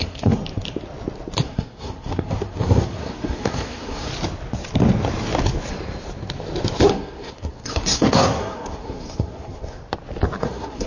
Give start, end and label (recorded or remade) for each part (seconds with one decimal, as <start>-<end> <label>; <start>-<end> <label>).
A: 0.0-0.4 remade; 0.4-1.4 recorded; 1.4-4.1 remade; 4.1-6.9 recorded; 6.9-9.8 remade; 9.8-10.4 recorded; 10.4-10.9 remade